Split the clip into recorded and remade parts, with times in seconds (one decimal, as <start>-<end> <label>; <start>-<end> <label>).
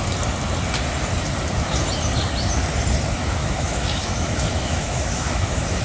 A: 0.0-3.4 recorded; 3.4-5.8 remade